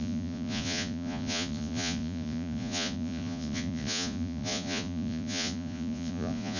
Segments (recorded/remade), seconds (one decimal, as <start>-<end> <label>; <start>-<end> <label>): 0.0-6.6 remade